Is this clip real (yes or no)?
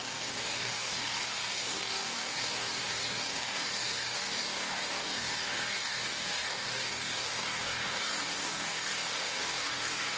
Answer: no